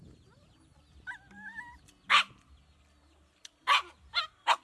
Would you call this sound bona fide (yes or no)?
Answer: yes